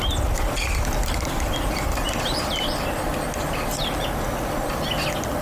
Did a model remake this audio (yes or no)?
no